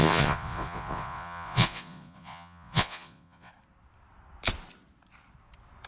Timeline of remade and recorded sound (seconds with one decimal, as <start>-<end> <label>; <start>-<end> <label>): 0.0-3.5 remade; 3.5-5.9 recorded

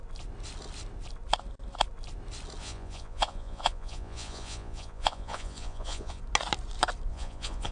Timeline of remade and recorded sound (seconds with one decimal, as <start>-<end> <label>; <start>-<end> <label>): 0.0-2.6 recorded; 2.6-6.2 remade; 6.2-7.1 recorded; 7.1-7.7 remade

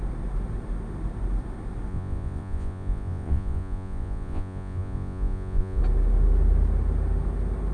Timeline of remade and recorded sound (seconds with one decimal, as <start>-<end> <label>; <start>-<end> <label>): 0.0-1.9 recorded; 1.9-5.8 remade; 5.8-7.7 recorded

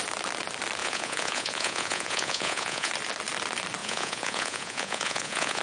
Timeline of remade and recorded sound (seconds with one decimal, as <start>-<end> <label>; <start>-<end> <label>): 0.0-0.8 recorded; 0.8-2.9 remade; 2.9-3.8 recorded; 3.8-5.6 remade

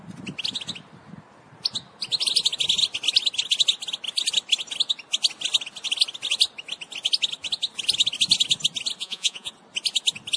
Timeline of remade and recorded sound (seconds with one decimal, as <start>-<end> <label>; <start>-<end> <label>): 0.0-9.0 recorded; 9.0-9.5 remade; 9.5-10.4 recorded

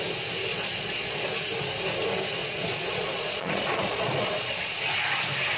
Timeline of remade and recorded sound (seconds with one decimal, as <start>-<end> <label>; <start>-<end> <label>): 0.0-0.5 recorded; 0.5-1.2 remade; 1.2-2.4 recorded; 2.4-4.8 remade; 4.8-5.6 recorded

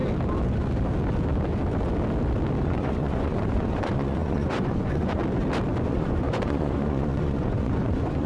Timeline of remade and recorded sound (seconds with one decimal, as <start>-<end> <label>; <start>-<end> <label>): 0.0-2.6 recorded; 2.6-5.2 remade; 5.2-5.8 recorded; 5.8-8.3 remade

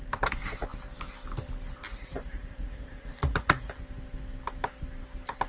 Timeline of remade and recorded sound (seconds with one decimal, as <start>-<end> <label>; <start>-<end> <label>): 0.0-1.9 recorded; 1.9-3.7 remade; 3.7-5.5 recorded